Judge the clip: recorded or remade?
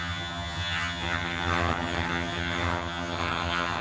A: remade